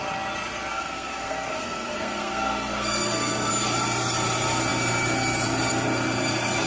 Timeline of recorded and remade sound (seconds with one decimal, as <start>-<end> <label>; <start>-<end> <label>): 0.0-0.7 recorded; 0.7-3.5 remade; 3.5-6.7 recorded